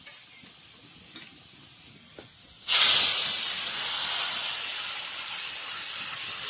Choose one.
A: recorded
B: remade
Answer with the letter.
A